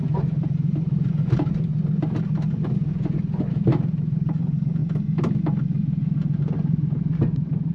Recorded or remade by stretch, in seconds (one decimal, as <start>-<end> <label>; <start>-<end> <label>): 0.0-1.7 remade; 1.7-3.5 recorded; 3.5-4.8 remade; 4.8-6.4 recorded; 6.4-7.7 remade